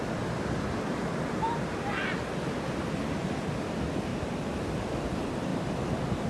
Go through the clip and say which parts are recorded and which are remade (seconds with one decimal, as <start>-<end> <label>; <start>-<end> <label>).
0.0-6.3 recorded